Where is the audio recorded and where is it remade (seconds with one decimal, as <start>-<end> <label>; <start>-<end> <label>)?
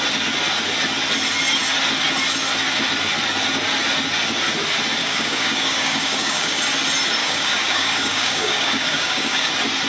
0.0-5.0 recorded; 5.0-6.6 remade; 6.6-7.2 recorded; 7.2-9.5 remade; 9.5-9.9 recorded